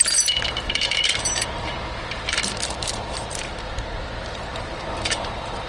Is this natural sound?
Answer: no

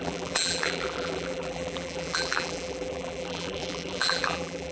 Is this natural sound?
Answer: no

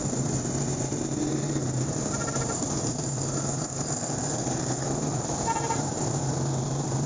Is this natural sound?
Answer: no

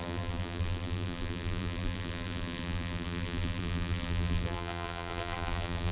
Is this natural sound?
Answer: no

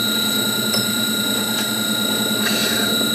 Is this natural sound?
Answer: no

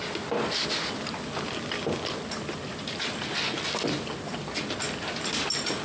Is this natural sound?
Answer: yes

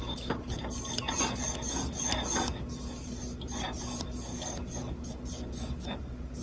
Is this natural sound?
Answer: yes